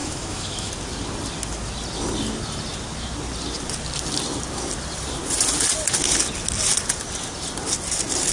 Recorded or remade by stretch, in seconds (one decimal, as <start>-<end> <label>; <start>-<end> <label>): 0.0-0.7 remade; 0.7-8.3 recorded